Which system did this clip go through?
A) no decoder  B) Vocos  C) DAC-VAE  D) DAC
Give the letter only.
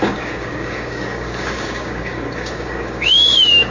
D